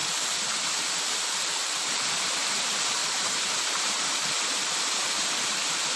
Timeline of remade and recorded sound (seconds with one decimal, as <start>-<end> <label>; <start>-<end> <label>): 0.0-6.0 remade